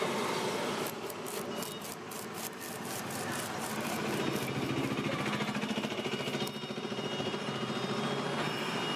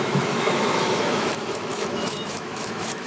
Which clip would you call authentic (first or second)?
first